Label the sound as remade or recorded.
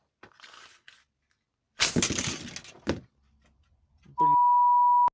recorded